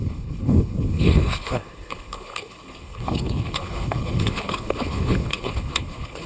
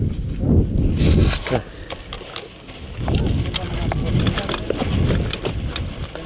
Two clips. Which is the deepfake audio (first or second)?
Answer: first